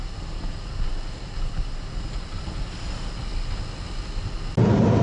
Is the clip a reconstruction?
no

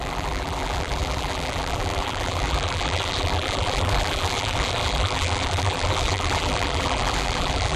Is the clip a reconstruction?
yes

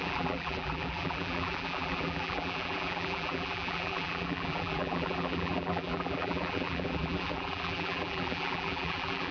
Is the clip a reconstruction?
yes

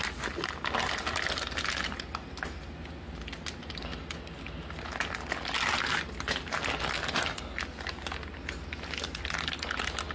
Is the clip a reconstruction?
no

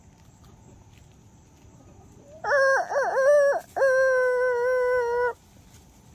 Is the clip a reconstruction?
no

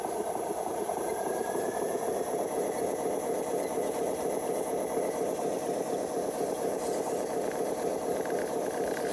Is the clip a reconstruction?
yes